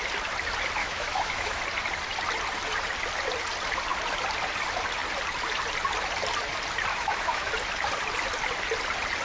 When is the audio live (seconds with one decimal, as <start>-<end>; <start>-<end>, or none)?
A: 0.0-0.8; 1.6-6.9; 7.5-9.2